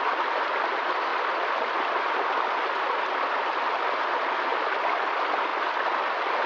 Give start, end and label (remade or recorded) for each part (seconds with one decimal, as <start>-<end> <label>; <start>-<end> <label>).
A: 0.0-6.5 recorded